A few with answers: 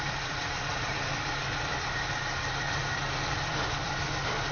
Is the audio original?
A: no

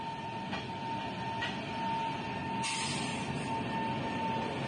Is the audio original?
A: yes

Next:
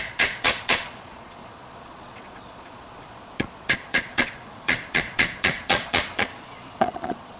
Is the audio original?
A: no